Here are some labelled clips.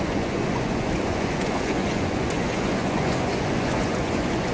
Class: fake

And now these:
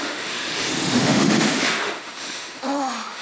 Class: fake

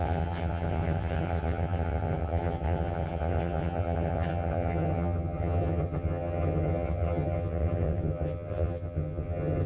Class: fake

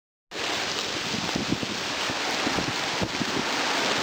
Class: real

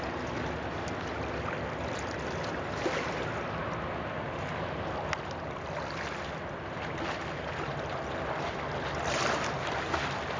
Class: real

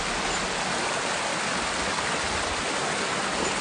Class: real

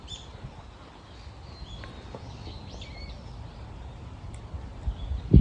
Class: real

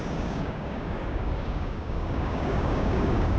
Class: fake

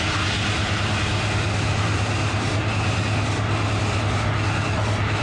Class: real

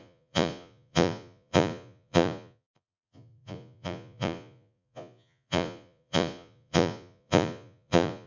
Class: fake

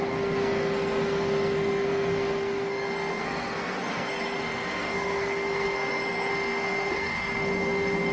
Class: fake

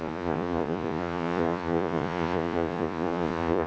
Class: fake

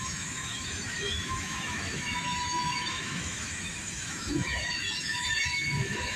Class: fake